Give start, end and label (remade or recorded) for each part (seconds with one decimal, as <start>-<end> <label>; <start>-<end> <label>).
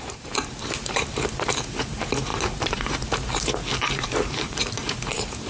0.0-5.5 remade